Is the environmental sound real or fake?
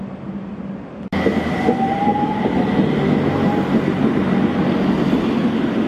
real